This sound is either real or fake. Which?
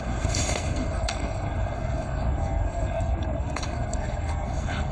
fake